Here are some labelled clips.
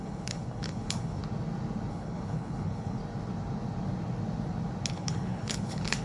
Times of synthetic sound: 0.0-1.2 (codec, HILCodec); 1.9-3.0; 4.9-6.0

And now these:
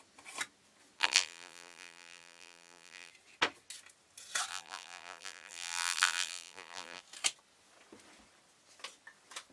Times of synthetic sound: 1.0-3.1 (vocoder, BigVGAN v2); 4.5-7.0

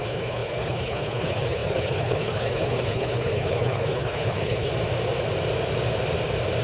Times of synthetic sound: 0.0-4.7 (codec, HILCodec)

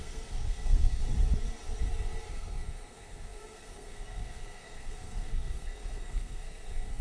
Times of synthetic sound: 0.0-1.0 (codec, SNAC); 2.3-7.0

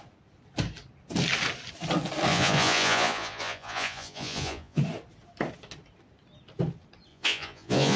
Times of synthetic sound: 2.3-4.8 (vocoder, Vocos); 7.1-8.0

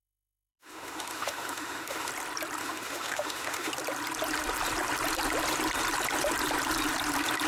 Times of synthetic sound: 0.0-2.1 (autoencoder, DAC-VAE); 2.6-3.7

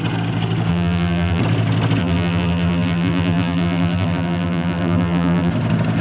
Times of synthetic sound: 0.7-1.4 (vocoder, BigVGAN v2); 2.0-5.5